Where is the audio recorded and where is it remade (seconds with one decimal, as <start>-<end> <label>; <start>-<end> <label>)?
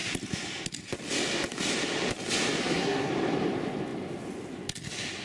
0.0-2.6 recorded; 2.6-3.1 remade; 3.1-5.2 recorded